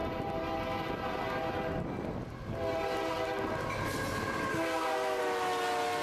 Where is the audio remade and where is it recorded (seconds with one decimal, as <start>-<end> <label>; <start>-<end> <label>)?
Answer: 0.0-4.5 recorded; 4.5-5.2 remade; 5.2-6.0 recorded